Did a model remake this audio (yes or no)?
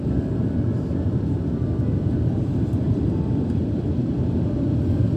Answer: yes